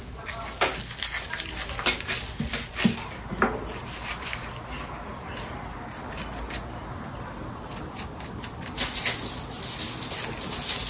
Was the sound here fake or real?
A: real